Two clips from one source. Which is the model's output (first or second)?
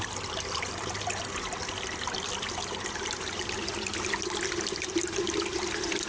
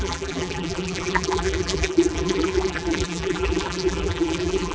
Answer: second